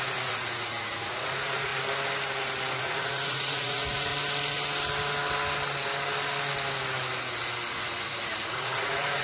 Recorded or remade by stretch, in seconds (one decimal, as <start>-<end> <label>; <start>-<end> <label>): 0.0-1.7 remade; 1.7-2.8 recorded; 2.8-4.1 remade; 4.1-7.7 recorded; 7.7-9.2 remade